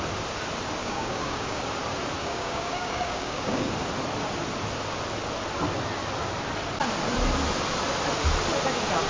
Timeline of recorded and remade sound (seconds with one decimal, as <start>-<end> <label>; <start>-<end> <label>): 0.0-0.8 recorded; 0.8-1.6 remade; 1.6-2.2 recorded; 2.2-3.7 remade; 3.7-9.1 recorded